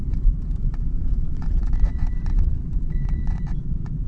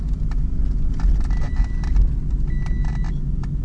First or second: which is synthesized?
first